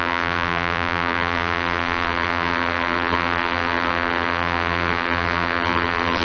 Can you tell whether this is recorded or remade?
remade